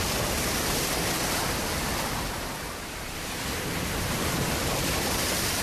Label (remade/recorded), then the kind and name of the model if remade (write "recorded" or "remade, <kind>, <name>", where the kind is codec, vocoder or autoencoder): recorded